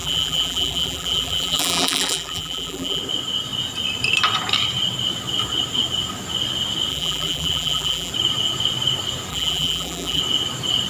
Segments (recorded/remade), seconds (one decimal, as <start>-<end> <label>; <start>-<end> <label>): 0.0-3.0 remade; 3.0-6.9 recorded; 6.9-8.1 remade; 8.1-9.3 recorded; 9.3-10.2 remade; 10.2-10.9 recorded